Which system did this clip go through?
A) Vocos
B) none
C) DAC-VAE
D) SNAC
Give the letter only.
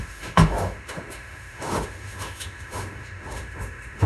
C